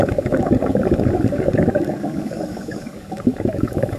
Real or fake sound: fake